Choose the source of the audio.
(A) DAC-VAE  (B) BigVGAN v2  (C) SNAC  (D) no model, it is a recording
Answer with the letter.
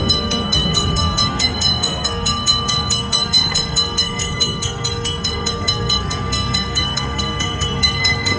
C